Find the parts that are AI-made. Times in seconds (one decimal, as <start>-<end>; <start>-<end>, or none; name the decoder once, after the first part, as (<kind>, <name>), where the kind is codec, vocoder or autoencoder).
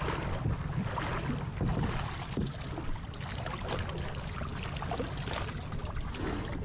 none